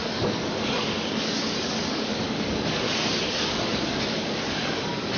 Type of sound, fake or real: fake